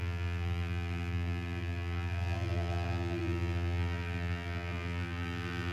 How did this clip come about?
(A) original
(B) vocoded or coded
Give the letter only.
B